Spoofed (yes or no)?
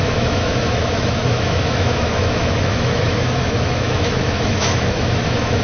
yes